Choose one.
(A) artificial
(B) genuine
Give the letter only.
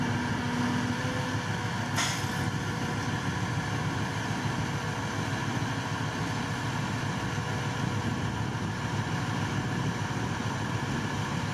B